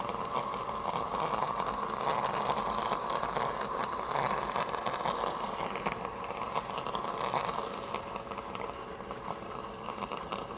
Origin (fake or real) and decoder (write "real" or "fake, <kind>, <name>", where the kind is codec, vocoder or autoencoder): real